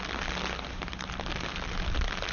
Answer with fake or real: real